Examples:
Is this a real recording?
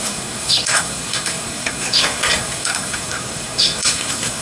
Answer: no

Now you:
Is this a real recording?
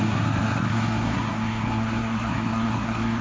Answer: no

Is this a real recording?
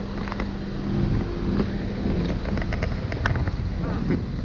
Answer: yes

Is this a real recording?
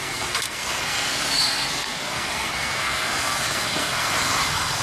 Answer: no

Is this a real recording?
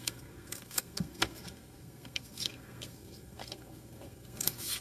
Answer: no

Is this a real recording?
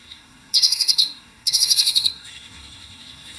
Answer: no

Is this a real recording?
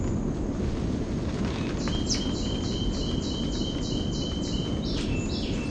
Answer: yes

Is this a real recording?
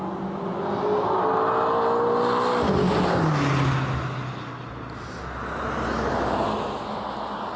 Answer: yes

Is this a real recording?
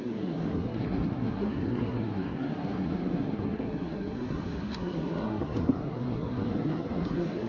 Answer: no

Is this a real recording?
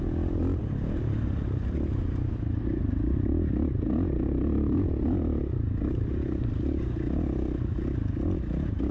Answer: yes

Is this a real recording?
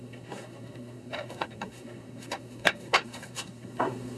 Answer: no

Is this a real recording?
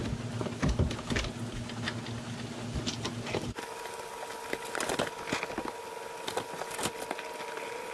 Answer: yes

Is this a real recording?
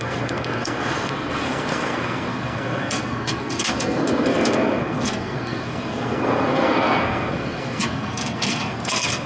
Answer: no